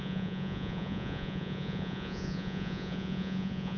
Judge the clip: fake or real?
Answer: fake